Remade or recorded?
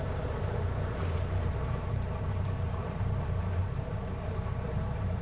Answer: remade